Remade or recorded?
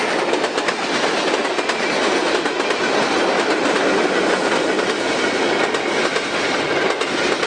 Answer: recorded